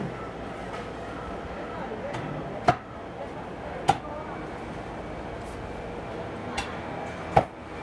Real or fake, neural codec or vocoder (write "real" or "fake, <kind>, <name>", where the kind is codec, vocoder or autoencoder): real